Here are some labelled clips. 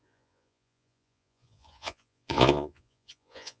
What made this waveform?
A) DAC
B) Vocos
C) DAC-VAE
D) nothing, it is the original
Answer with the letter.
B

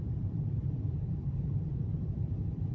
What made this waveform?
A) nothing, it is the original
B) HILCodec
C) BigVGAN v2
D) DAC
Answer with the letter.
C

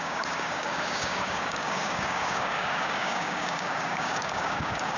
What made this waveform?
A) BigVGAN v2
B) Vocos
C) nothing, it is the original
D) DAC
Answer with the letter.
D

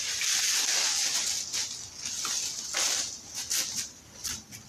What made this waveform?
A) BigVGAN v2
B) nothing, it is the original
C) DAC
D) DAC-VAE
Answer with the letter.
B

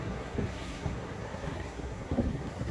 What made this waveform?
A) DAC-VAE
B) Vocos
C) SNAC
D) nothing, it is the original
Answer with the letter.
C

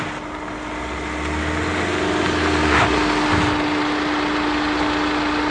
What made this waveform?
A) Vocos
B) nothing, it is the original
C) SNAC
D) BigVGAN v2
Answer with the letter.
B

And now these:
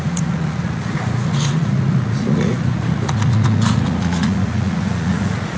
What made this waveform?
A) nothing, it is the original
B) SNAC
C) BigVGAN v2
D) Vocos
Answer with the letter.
D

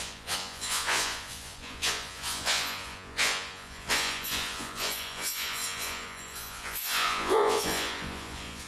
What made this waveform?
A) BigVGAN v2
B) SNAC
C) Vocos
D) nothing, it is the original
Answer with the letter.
C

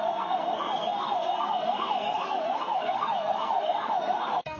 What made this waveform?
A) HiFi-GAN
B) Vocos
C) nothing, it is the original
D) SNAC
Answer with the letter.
D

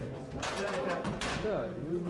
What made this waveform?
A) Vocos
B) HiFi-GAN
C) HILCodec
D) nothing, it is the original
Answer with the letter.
A